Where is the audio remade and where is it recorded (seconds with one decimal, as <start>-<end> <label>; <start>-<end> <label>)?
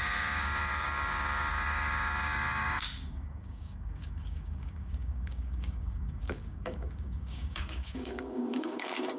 0.0-9.2 remade